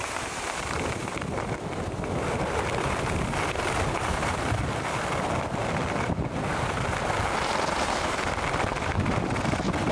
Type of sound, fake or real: real